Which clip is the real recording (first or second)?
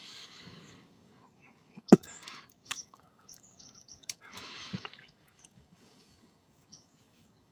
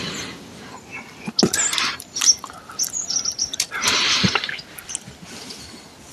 second